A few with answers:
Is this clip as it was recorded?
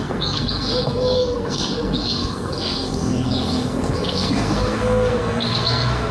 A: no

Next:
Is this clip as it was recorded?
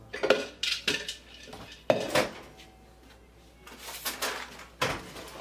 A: yes